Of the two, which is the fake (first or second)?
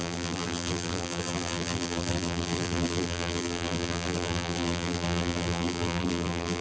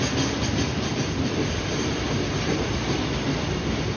first